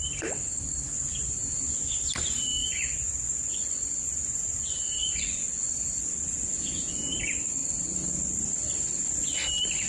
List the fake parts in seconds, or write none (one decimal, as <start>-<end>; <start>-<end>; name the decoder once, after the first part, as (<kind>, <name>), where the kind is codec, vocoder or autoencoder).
2.6-5.7 (vocoder, Vocos)